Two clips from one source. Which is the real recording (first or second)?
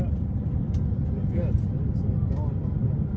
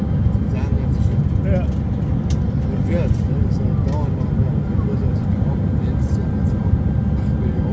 second